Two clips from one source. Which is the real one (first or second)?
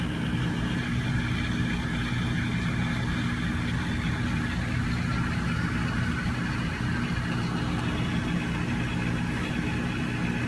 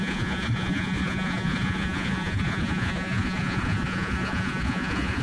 first